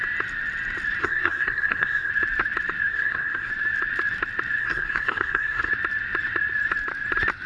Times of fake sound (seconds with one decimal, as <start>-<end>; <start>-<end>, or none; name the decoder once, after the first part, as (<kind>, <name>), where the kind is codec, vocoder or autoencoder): 1.0-2.1 (codec, SNAC); 2.9-3.5; 4.6-5.7